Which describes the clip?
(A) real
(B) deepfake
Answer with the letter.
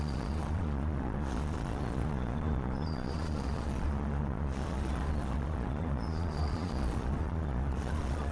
B